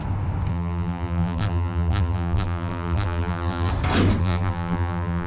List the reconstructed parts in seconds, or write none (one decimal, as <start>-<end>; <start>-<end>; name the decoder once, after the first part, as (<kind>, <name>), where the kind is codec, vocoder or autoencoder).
0.5-3.7 (vocoder, BigVGAN v2); 4.2-5.3